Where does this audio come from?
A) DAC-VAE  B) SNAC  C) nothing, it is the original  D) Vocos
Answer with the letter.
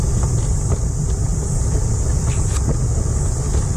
C